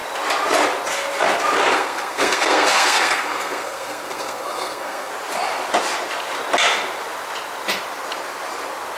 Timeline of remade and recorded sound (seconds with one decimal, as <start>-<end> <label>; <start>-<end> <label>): 0.0-1.7 recorded; 1.7-5.1 remade; 5.1-9.0 recorded